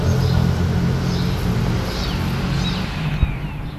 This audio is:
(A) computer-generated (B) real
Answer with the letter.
B